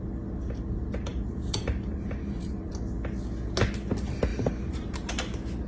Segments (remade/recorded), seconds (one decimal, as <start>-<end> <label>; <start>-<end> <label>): 0.0-1.1 recorded; 1.1-2.7 remade; 2.7-4.3 recorded; 4.3-5.1 remade; 5.1-5.7 recorded